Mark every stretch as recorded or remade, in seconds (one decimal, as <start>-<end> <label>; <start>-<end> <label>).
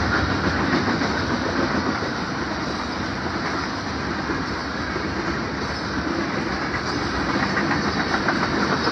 0.0-8.9 recorded